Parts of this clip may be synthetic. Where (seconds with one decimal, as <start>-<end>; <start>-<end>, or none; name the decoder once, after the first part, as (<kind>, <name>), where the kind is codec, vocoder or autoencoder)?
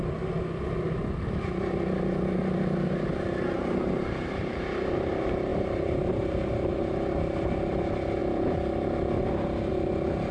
3.1-5.1 (vocoder, BigVGAN v2); 5.5-6.7